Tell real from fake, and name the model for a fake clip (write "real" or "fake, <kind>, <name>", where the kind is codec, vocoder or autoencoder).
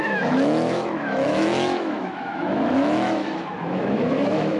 fake, autoencoder, DAC-VAE